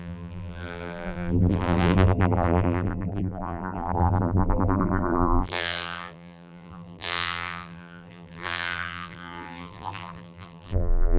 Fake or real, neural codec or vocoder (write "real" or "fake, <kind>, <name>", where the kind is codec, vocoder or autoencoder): fake, vocoder, BigVGAN v2